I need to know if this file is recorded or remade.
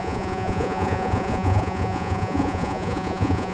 remade